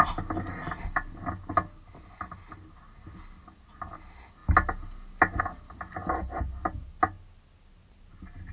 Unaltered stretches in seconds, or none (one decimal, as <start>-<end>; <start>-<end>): 0.0-8.5